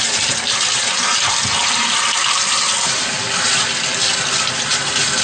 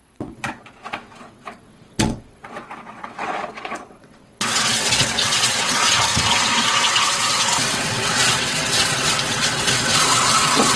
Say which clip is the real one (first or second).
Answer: first